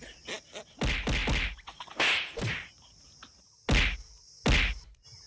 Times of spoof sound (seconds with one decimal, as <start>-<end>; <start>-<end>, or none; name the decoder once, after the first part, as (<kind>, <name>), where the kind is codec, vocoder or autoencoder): none